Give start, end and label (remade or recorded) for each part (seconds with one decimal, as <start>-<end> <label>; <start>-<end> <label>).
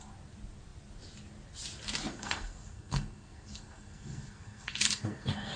0.0-2.1 recorded; 2.1-5.6 remade